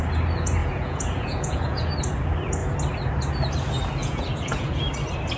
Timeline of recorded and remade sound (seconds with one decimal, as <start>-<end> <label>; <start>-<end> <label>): 0.0-0.6 recorded; 0.6-1.9 remade; 1.9-4.0 recorded; 4.0-4.8 remade; 4.8-5.4 recorded